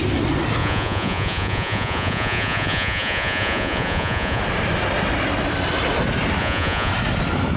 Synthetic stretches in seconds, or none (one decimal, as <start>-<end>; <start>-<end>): 0.6-4.4; 6.4-6.9